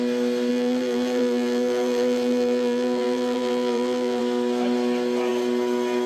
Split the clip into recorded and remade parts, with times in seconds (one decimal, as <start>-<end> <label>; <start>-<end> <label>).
0.0-0.5 recorded; 0.5-4.2 remade; 4.2-6.1 recorded